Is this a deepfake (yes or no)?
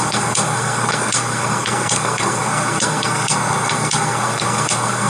yes